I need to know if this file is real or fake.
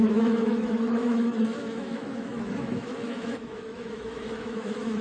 fake